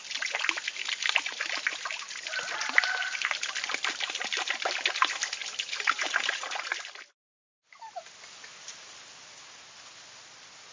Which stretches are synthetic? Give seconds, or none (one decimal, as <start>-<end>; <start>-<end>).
5.4-6.1; 8.5-9.5